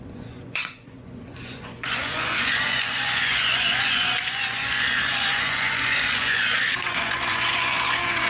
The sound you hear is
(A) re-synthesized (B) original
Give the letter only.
A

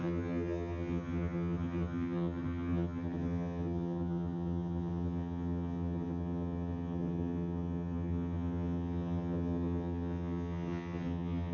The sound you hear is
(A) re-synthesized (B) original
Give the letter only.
A